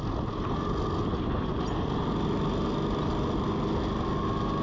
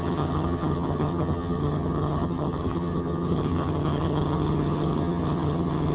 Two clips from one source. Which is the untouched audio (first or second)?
first